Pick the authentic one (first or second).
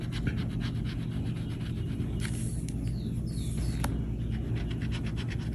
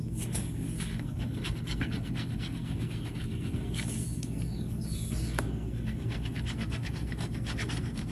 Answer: first